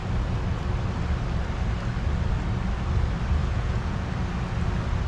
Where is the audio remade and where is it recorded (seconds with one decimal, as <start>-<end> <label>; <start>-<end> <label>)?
0.0-3.4 recorded; 3.4-4.0 remade; 4.0-5.1 recorded